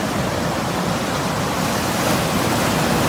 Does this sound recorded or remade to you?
recorded